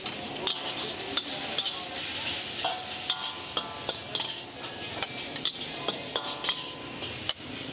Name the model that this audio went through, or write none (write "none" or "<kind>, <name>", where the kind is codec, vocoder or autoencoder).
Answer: none